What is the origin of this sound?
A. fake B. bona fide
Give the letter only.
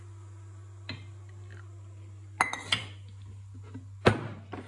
B